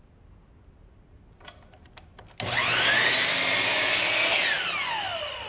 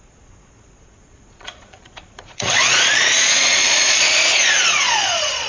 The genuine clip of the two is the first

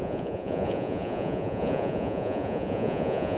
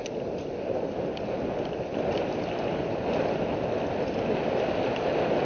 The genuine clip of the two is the second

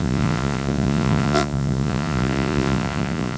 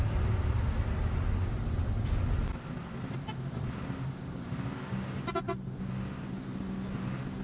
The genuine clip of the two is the second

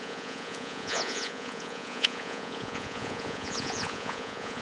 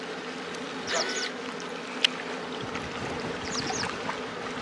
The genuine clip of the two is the second